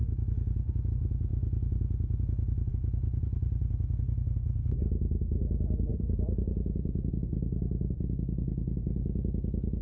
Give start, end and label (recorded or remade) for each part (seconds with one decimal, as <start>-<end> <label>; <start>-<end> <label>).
0.0-3.1 recorded; 3.1-3.7 remade; 3.7-5.9 recorded; 5.9-7.1 remade; 7.1-9.8 recorded